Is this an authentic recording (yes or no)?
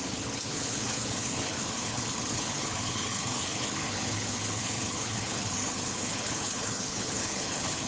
no